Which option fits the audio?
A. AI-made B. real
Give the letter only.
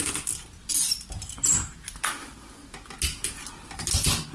B